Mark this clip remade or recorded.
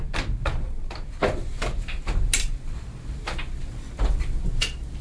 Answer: recorded